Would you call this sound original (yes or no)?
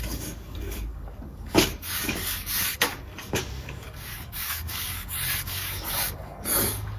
no